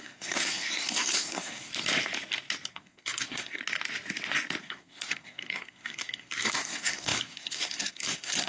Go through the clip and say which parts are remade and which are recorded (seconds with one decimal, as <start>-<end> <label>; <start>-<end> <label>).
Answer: 0.0-1.7 remade; 1.7-2.7 recorded; 2.7-3.6 remade; 3.6-4.6 recorded; 4.6-8.5 remade